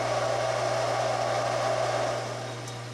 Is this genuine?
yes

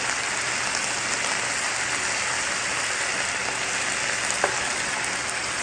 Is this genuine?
yes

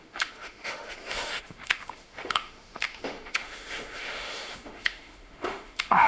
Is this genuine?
no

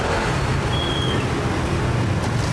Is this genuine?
yes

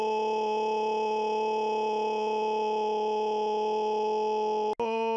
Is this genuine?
yes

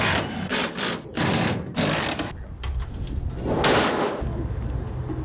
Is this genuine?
yes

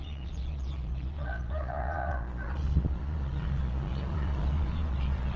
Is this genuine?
no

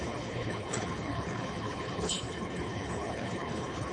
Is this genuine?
no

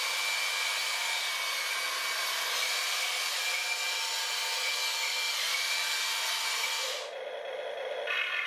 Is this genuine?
yes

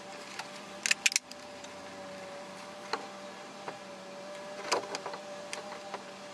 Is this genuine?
yes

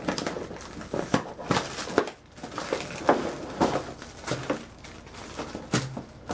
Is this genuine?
yes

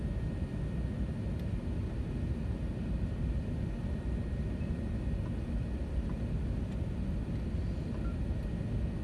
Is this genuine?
yes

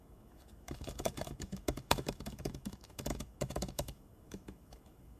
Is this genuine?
no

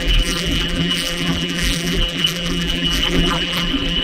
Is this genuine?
no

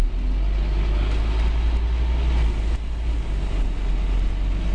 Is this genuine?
yes